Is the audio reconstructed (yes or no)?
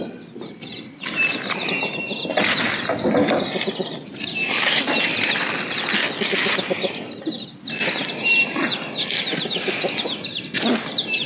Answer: no